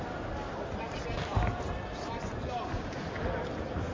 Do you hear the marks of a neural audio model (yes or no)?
no